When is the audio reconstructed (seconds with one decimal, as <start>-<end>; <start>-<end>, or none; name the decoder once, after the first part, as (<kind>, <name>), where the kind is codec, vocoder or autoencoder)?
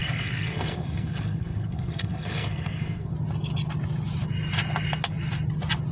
0.0-3.1 (codec, SNAC)